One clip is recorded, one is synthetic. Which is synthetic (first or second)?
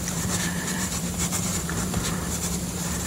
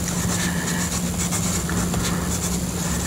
first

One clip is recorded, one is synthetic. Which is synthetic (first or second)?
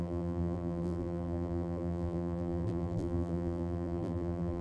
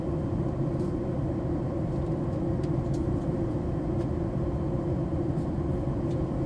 first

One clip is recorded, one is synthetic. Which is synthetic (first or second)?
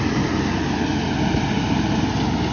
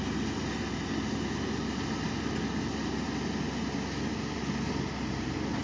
first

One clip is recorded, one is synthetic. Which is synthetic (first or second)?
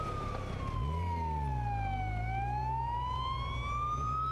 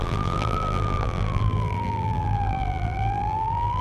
second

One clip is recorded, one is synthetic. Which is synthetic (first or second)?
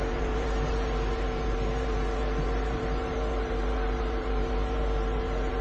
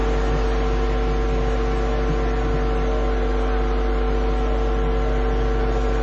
first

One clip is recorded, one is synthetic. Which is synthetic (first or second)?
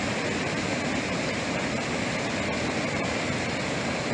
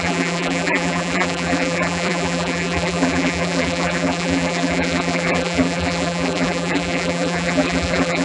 second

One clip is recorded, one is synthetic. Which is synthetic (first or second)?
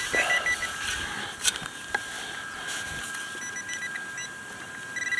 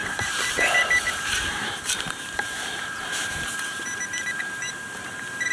second